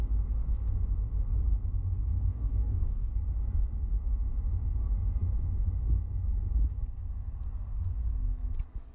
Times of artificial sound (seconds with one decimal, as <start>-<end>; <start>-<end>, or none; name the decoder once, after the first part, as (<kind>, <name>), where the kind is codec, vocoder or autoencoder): 2.3-3.2 (codec, DAC)